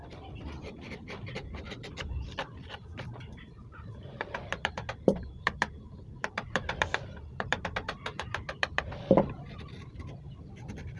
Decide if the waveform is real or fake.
fake